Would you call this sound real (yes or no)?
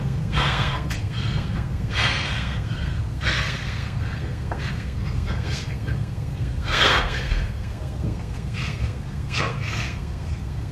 no